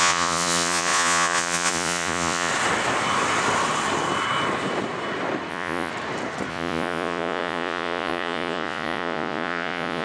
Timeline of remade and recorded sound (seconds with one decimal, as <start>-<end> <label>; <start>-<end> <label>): 0.0-2.5 remade; 2.5-5.5 recorded; 5.5-5.9 remade; 5.9-6.5 recorded; 6.5-10.0 remade